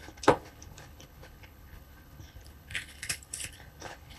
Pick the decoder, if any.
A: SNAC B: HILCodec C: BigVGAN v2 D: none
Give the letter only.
B